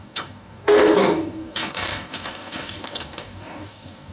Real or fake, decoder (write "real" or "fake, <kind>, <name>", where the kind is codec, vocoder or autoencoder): fake, codec, DAC